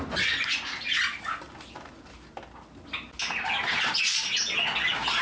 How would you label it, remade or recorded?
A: recorded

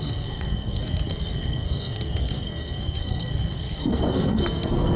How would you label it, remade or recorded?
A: remade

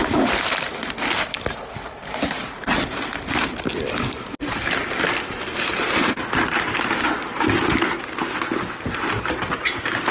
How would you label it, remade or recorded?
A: recorded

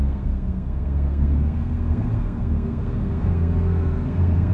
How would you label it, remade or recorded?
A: remade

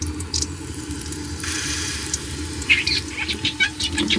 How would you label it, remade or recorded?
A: remade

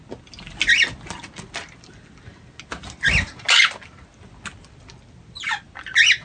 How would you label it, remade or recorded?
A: recorded